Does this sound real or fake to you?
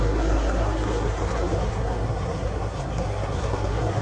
fake